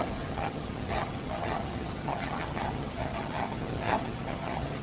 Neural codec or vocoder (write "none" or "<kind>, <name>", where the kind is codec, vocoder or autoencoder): vocoder, HiFi-GAN